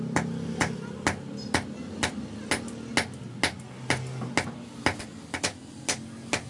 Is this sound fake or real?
real